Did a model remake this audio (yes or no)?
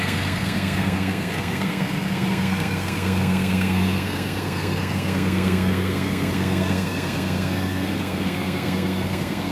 yes